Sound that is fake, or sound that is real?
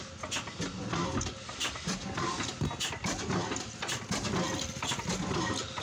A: real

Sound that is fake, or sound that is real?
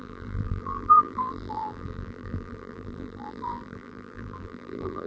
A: fake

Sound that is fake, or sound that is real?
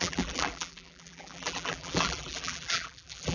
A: fake